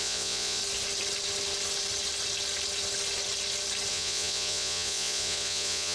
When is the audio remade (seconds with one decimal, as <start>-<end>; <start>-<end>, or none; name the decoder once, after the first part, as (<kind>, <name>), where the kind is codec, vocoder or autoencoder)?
0.0-0.6 (vocoder, Vocos); 3.9-5.9